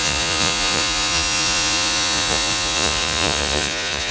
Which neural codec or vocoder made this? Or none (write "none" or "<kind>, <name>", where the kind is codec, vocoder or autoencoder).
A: vocoder, Vocos